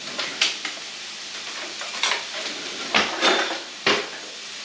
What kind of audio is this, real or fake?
real